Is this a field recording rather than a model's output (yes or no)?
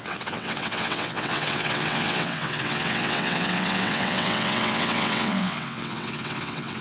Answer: no